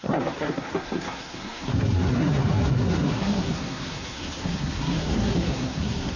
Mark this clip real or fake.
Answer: fake